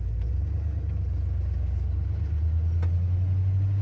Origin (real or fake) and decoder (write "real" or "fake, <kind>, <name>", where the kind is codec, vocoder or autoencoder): real